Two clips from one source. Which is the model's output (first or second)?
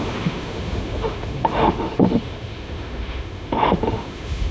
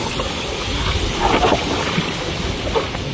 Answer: first